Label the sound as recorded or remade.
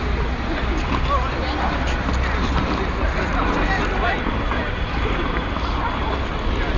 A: recorded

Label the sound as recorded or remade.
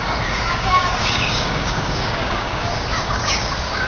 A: remade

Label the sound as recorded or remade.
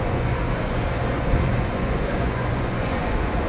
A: remade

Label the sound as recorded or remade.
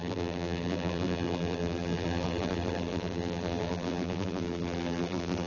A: remade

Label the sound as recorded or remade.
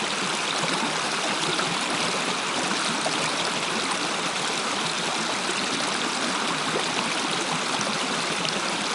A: recorded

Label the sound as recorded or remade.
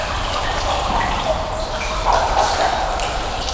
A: remade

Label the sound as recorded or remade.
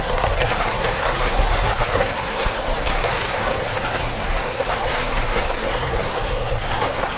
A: remade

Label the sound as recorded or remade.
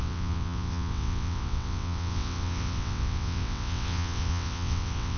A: remade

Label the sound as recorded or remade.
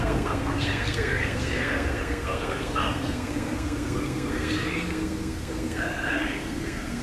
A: remade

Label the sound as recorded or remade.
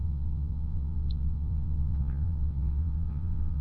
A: remade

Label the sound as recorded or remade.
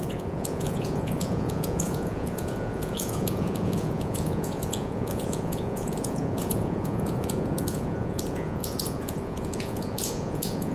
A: remade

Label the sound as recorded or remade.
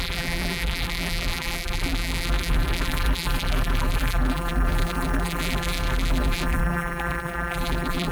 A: remade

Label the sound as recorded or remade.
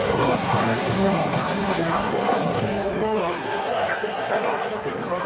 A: remade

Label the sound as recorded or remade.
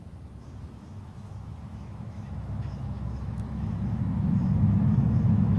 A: remade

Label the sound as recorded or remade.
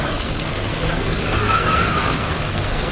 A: remade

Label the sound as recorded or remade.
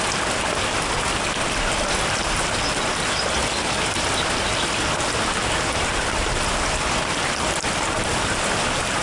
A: recorded